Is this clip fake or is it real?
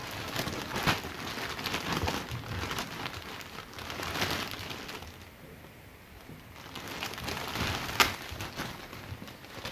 real